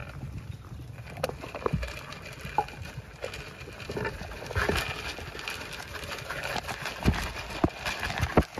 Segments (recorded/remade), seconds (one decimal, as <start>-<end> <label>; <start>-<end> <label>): 0.0-8.6 recorded